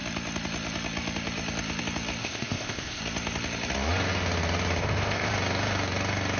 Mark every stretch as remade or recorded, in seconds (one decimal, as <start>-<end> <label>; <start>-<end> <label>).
0.0-2.2 recorded; 2.2-3.0 remade; 3.0-4.8 recorded; 4.8-5.3 remade; 5.3-6.4 recorded